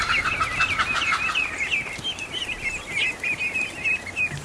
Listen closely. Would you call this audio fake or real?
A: real